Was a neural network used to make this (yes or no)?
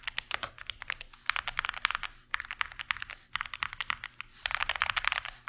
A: no